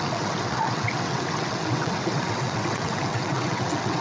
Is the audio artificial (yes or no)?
yes